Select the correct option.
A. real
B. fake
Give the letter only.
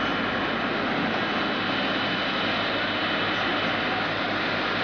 A